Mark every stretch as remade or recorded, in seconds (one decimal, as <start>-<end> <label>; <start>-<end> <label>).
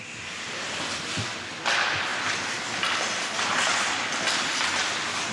0.0-5.3 recorded